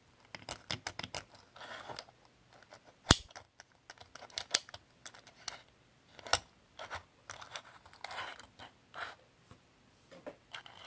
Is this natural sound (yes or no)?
yes